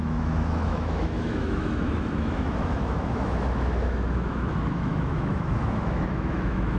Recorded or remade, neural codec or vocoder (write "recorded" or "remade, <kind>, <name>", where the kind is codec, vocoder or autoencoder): remade, autoencoder, DAC-VAE